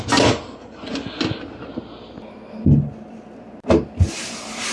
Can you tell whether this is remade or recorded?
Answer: recorded